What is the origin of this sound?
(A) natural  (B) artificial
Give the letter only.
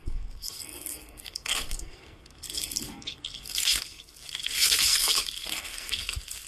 B